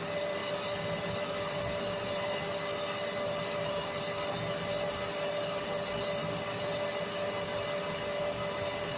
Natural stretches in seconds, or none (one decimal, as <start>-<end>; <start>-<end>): 0.0-9.0